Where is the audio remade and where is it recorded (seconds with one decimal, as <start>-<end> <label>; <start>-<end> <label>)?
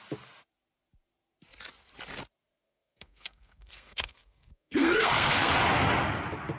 0.0-2.6 recorded; 2.6-5.5 remade; 5.5-6.6 recorded